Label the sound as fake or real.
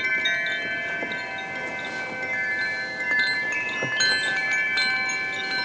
real